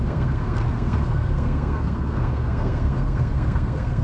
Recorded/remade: remade